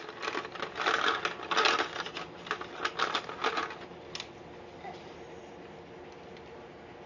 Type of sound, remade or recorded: recorded